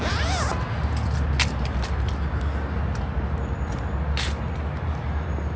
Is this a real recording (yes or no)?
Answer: yes